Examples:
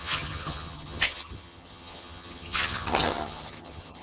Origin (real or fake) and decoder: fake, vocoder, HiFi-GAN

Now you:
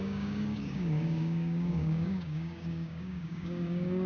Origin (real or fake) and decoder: fake, codec, DAC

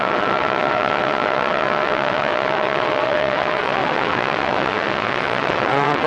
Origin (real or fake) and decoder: fake, vocoder, WaveNeXt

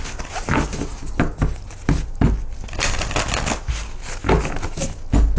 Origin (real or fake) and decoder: real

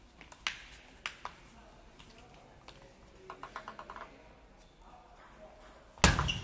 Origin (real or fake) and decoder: real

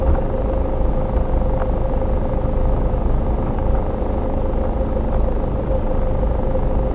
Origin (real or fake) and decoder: real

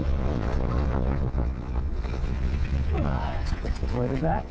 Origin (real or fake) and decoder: fake, vocoder, Vocos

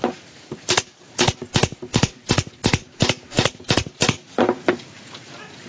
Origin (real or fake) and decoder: real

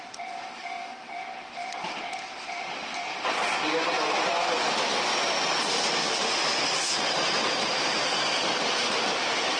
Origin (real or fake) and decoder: real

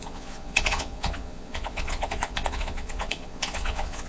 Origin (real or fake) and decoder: fake, vocoder, Vocos